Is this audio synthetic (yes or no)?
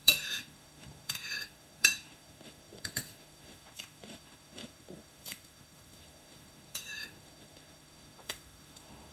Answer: yes